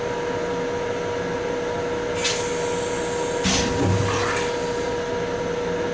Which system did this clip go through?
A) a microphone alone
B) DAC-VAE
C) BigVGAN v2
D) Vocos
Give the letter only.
A